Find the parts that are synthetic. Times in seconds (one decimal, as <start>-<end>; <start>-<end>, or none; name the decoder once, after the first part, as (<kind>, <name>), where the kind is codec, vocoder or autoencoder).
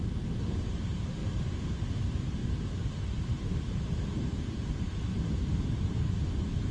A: 1.2-2.0 (vocoder, BigVGAN v2); 2.4-6.0